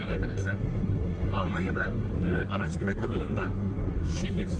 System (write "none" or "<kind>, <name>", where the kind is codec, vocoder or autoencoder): codec, SNAC